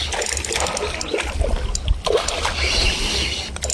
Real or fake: real